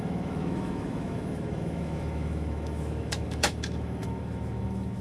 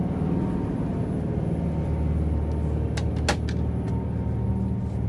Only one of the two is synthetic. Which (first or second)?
first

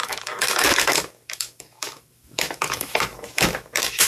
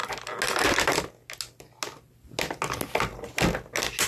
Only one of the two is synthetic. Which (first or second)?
first